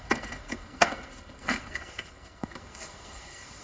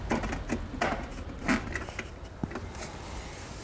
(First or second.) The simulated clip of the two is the first